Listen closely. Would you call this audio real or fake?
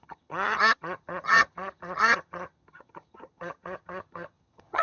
fake